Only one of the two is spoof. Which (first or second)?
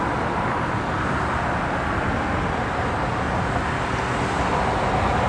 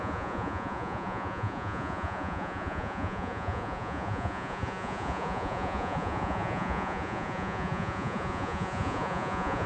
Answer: second